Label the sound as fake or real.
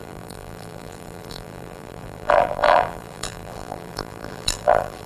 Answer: fake